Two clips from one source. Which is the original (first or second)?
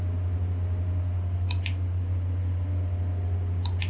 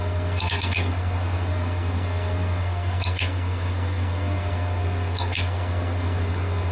first